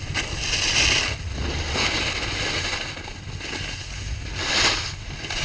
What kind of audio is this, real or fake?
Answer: real